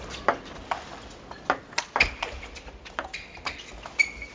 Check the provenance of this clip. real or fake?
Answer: real